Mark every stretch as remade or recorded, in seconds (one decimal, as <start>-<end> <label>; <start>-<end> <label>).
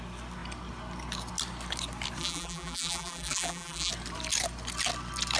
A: 0.0-2.2 recorded; 2.2-3.9 remade; 3.9-5.4 recorded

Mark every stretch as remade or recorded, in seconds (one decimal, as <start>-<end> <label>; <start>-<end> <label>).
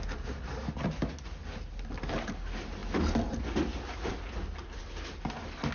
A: 0.0-5.7 recorded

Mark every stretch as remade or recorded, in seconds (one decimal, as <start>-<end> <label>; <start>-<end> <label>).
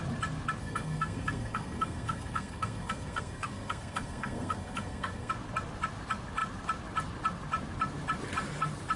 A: 0.0-0.6 recorded; 0.6-5.3 remade; 5.3-9.0 recorded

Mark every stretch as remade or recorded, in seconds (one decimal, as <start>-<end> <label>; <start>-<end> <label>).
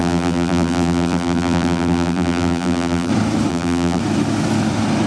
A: 0.0-3.1 remade; 3.1-3.5 recorded; 3.5-4.0 remade; 4.0-5.1 recorded